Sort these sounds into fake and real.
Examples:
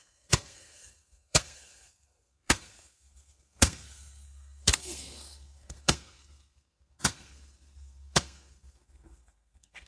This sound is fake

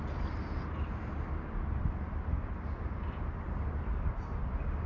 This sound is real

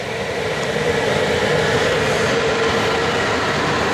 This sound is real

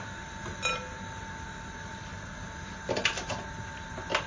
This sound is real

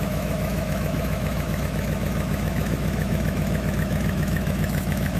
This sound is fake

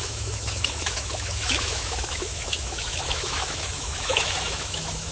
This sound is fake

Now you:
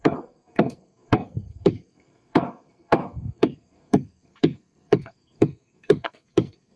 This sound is fake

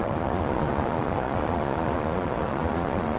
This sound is fake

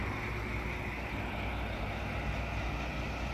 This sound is real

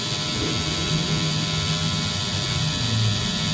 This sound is real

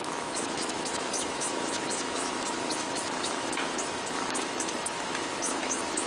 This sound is fake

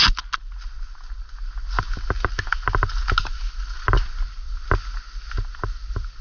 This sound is real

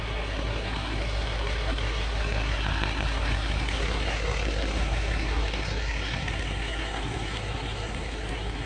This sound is fake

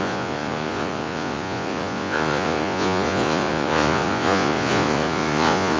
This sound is fake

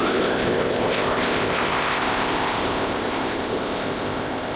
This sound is fake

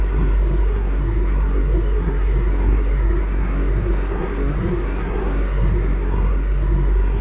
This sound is fake